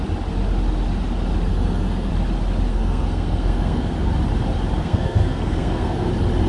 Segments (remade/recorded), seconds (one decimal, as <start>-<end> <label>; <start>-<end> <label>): 0.0-1.5 recorded; 1.5-2.1 remade; 2.1-2.7 recorded; 2.7-4.1 remade; 4.1-4.8 recorded; 4.8-6.1 remade; 6.1-6.5 recorded